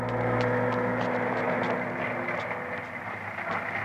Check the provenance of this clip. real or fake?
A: real